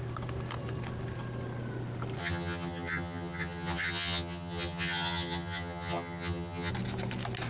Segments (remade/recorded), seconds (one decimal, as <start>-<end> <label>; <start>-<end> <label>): 0.0-2.2 recorded; 2.2-6.7 remade; 6.7-7.5 recorded